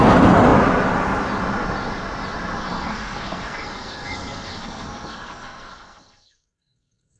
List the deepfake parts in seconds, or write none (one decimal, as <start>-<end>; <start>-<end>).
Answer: 2.6-7.2